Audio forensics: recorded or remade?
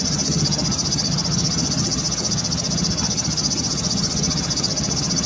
remade